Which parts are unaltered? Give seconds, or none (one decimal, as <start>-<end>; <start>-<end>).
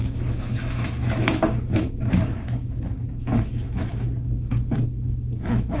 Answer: none